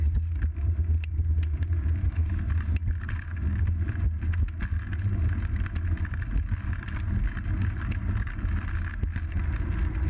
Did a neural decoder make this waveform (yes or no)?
no